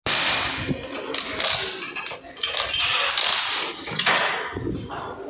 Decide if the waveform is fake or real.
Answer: real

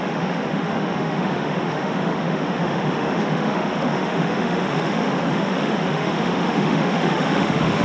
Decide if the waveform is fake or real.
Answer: fake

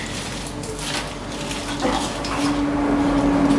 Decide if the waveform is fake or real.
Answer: real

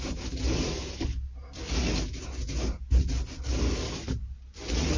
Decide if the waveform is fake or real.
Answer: real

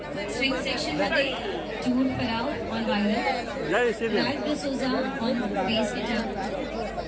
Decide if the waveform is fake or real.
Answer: real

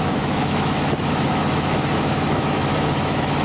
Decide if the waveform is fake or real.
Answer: fake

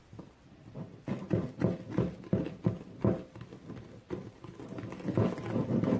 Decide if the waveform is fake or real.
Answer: real